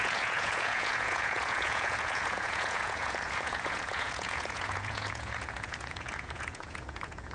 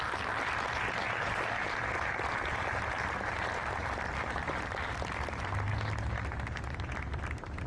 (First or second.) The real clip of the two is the second